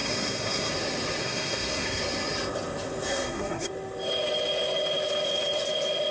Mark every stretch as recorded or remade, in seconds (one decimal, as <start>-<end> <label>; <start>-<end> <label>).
0.0-0.7 remade; 0.7-1.2 recorded; 1.2-2.0 remade; 2.0-3.1 recorded; 3.1-3.7 remade; 3.7-6.1 recorded